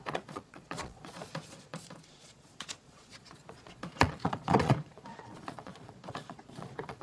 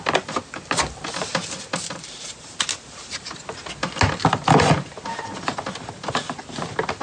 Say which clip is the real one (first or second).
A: second